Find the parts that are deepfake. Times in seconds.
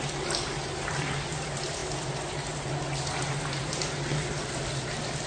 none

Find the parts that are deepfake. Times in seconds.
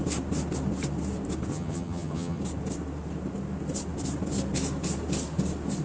1.5-2.4 (vocoder, HiFi-GAN)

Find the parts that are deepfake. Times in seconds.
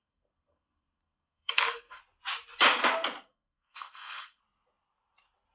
0.0-2.0 (codec, SNAC); 3.3-4.4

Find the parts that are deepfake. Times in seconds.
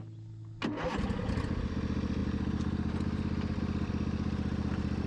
none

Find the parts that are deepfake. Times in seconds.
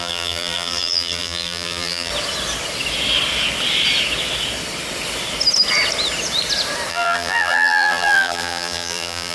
0.0-2.1 (vocoder, BigVGAN v2); 6.9-9.3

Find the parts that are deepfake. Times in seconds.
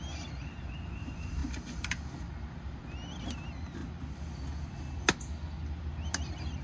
none